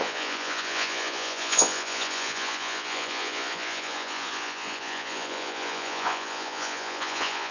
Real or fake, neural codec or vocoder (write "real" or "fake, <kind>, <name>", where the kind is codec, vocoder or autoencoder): fake, vocoder, Vocos